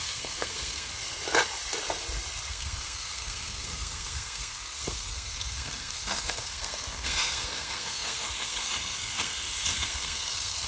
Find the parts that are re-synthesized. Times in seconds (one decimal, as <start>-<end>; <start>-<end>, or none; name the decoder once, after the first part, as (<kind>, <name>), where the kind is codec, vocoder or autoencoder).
0.0-0.9 (codec, SNAC); 2.5-10.7